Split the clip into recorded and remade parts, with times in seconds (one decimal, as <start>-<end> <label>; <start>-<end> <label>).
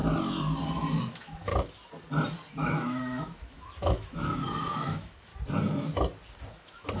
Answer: 0.0-1.0 recorded; 1.0-1.5 remade; 1.5-2.5 recorded; 2.5-5.3 remade; 5.3-6.5 recorded; 6.5-7.0 remade